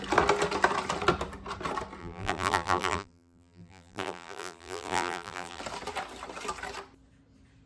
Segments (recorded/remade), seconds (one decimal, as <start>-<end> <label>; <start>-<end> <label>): 0.0-2.0 recorded; 2.0-5.6 remade; 5.6-7.7 recorded